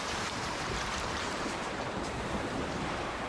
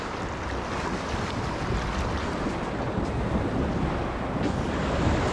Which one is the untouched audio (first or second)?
second